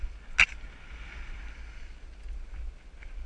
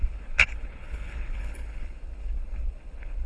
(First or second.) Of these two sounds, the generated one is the second